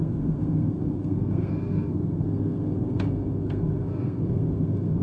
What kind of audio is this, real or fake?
fake